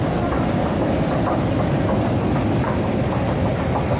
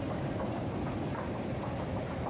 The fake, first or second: second